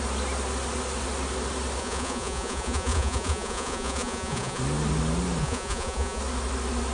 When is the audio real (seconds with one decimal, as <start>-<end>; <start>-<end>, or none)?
0.0-1.8; 4.6-5.4; 6.2-6.9